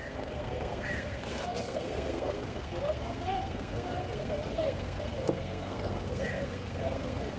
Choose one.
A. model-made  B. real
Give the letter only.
A